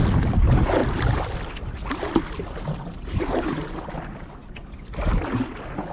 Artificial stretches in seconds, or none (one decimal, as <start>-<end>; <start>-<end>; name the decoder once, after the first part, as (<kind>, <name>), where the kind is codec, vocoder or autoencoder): none